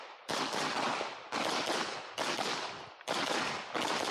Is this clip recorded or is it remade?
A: recorded